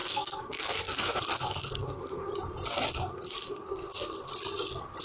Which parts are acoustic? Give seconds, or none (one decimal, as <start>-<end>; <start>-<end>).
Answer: 2.3-2.9; 4.3-5.0